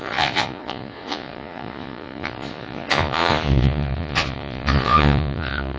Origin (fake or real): fake